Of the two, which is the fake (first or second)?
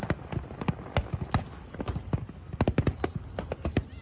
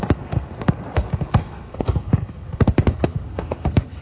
second